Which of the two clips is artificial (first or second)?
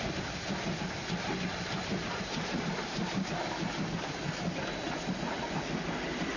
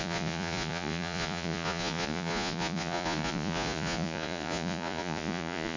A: second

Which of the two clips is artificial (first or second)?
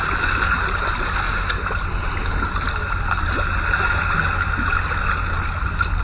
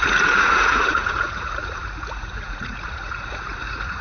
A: second